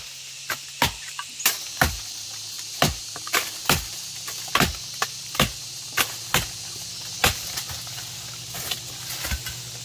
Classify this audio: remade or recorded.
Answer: recorded